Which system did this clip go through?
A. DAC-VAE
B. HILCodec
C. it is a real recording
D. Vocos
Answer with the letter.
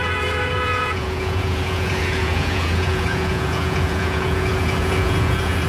D